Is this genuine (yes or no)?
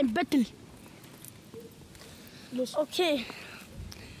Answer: yes